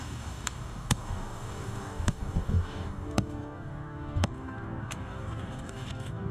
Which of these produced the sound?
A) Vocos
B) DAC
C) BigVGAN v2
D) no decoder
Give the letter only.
B